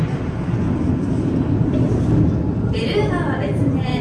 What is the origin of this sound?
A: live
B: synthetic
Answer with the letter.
A